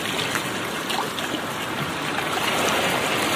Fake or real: real